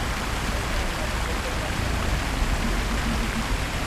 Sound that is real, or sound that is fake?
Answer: real